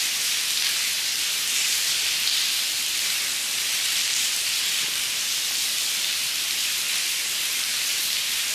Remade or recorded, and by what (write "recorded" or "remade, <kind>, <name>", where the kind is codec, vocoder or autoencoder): recorded